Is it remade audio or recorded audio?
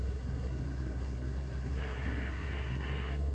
remade